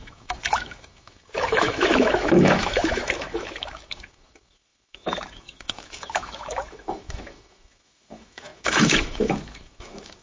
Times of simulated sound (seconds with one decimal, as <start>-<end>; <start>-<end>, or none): 0.0-10.2